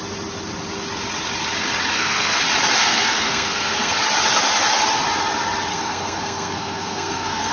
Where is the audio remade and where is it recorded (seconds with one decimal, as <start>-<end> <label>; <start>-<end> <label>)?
0.0-1.9 recorded; 1.9-2.4 remade; 2.4-2.8 recorded; 2.8-4.0 remade; 4.0-5.7 recorded; 5.7-7.5 remade